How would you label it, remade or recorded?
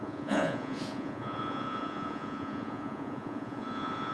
remade